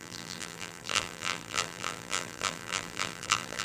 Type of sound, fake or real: fake